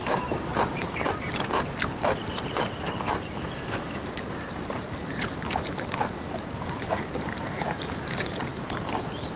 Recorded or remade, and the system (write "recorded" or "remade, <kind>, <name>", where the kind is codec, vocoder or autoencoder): remade, vocoder, BigVGAN v2